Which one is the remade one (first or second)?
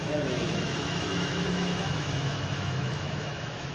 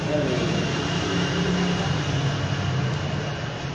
first